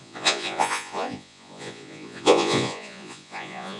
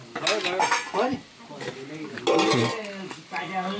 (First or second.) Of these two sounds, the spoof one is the first